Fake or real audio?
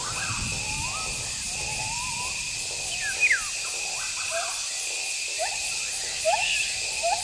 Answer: real